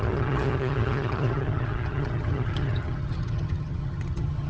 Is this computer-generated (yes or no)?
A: yes